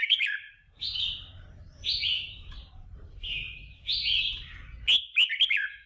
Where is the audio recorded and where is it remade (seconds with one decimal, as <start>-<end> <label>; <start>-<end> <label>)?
0.0-1.0 remade; 1.0-1.6 recorded; 1.6-3.5 remade; 3.5-5.9 recorded